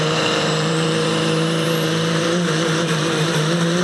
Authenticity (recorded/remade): remade